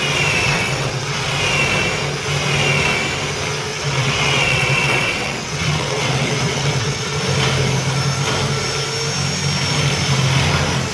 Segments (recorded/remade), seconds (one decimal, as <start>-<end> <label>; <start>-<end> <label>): 0.0-0.4 recorded; 0.4-1.3 remade; 1.3-3.7 recorded; 3.7-7.2 remade; 7.2-10.9 recorded